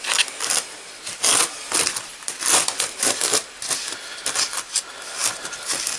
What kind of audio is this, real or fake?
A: real